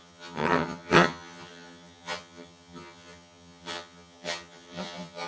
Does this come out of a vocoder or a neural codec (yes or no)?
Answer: yes